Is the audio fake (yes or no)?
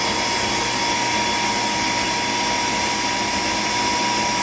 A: no